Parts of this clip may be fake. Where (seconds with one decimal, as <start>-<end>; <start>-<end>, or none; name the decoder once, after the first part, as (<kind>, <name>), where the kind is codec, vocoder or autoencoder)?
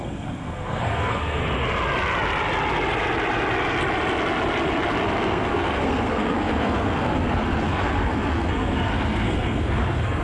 0.0-1.4 (codec, SNAC); 5.2-10.2